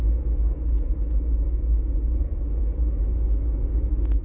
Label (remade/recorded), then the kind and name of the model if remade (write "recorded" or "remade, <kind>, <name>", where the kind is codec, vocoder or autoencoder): recorded